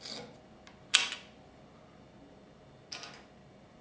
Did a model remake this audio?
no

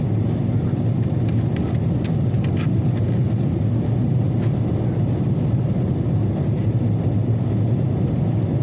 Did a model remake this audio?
no